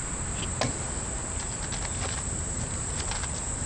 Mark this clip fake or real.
real